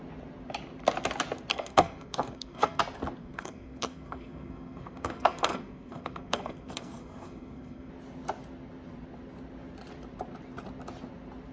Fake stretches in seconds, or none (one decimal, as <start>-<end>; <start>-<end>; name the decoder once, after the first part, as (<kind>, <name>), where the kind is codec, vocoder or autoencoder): 1.5-2.8 (codec, SNAC); 3.2-7.9